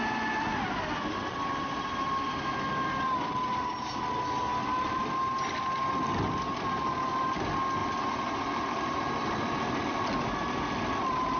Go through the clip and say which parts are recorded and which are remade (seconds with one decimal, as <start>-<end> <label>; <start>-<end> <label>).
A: 0.0-11.4 recorded